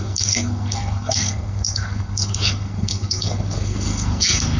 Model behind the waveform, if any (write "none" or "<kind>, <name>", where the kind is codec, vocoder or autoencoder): codec, SNAC